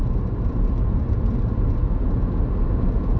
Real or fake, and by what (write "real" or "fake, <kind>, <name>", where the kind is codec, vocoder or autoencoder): real